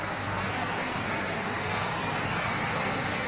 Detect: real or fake fake